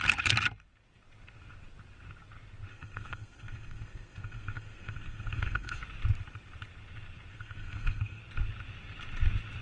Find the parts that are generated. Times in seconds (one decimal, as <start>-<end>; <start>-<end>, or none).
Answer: 2.7-5.8; 7.3-8.2